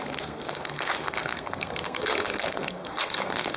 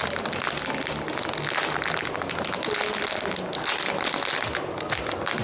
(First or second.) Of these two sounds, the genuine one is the second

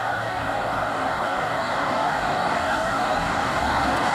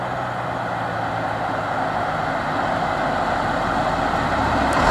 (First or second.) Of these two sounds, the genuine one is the second